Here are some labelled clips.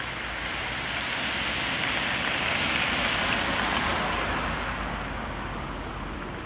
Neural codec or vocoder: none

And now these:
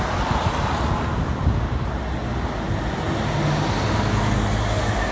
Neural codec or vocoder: none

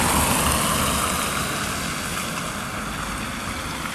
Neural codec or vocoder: none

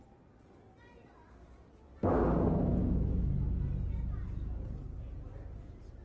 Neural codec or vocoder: none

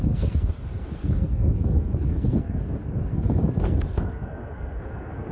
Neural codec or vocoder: codec, SNAC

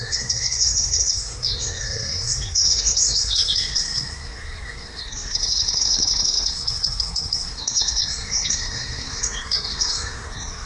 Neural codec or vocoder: codec, SNAC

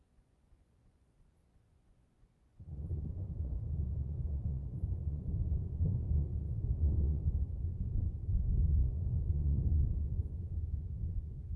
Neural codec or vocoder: vocoder, Vocos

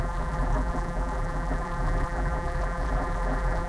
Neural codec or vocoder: vocoder, BigVGAN v2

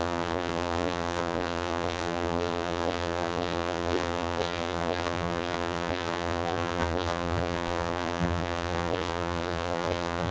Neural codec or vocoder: vocoder, BigVGAN v2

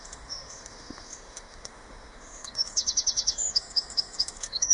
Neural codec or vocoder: autoencoder, DAC-VAE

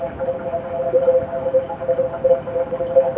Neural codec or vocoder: none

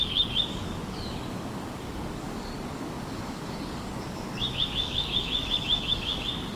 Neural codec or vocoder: codec, DAC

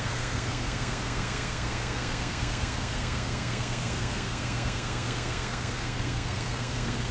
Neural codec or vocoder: codec, SNAC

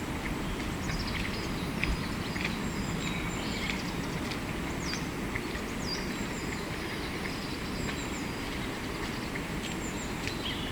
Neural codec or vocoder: none